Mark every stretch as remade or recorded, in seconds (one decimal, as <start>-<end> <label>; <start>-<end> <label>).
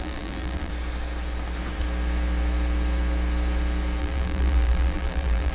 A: 0.0-0.7 remade; 0.7-4.0 recorded; 4.0-5.5 remade